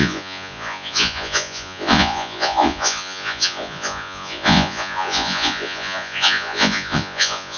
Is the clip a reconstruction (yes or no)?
yes